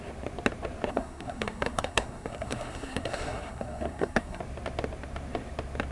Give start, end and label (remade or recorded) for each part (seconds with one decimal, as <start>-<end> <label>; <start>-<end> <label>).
0.0-0.9 recorded; 0.9-4.4 remade; 4.4-5.9 recorded